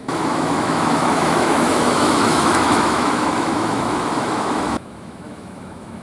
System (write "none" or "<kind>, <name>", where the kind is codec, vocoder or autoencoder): autoencoder, DAC-VAE